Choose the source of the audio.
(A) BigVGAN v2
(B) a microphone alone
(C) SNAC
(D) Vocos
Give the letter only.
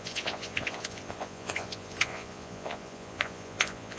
D